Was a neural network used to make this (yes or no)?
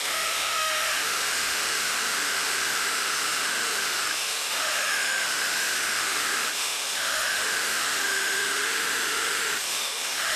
yes